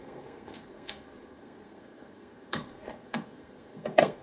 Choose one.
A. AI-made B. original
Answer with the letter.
A